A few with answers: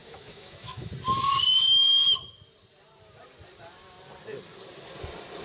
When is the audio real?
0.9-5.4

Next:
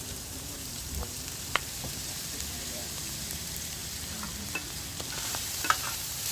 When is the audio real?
3.8-5.2

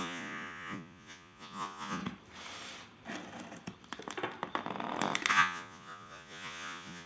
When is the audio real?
2.0-5.3

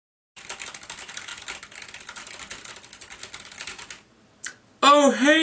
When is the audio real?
0.0-5.4